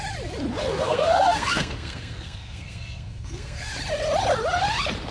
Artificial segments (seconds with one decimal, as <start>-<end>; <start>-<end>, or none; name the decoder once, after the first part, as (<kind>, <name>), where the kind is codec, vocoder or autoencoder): 0.6-3.7 (codec, SNAC)